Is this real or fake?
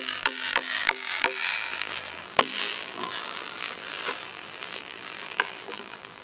fake